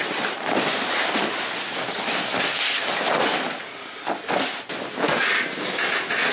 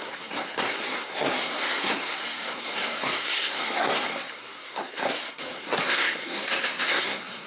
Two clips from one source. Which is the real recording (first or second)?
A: first